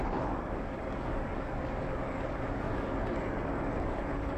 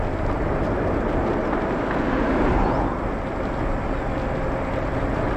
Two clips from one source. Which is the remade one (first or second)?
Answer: first